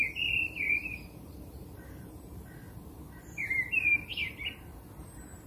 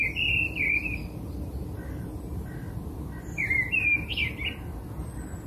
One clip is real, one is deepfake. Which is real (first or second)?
second